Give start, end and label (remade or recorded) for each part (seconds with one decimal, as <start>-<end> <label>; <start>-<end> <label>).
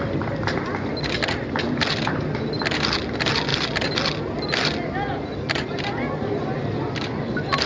0.0-7.7 recorded